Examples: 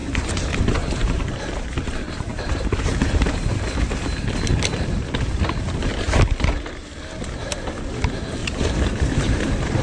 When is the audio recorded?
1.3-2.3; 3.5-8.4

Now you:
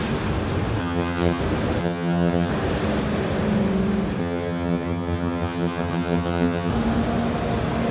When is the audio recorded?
0.0-0.8; 1.4-1.8; 2.5-4.2; 6.7-7.9

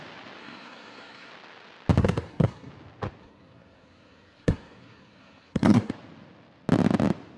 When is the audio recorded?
0.0-0.4; 1.3-2.0; 2.7-3.2; 5.9-7.4

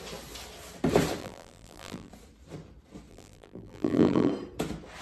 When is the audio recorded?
0.0-1.2; 2.1-3.1; 4.3-5.0

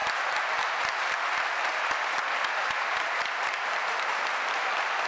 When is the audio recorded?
0.0-5.1

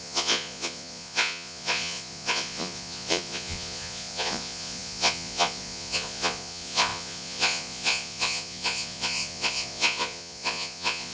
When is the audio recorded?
none

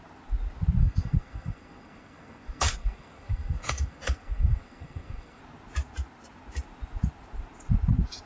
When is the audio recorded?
0.0-0.8; 5.4-8.3